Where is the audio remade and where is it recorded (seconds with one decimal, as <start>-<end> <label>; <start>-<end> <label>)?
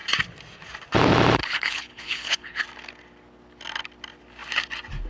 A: 0.0-1.4 recorded; 1.4-2.6 remade; 2.6-5.1 recorded